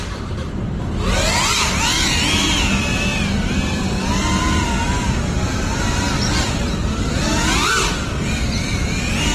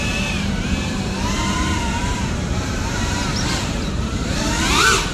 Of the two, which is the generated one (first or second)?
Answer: second